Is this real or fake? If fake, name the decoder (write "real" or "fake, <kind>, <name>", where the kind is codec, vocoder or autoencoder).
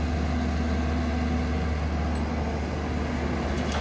real